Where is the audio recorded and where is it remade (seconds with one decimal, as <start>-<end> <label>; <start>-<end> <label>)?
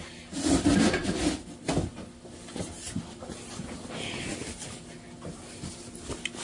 0.0-6.4 recorded